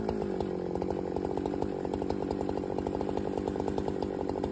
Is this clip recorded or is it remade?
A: recorded